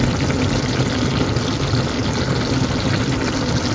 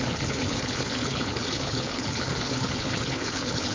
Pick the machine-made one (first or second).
second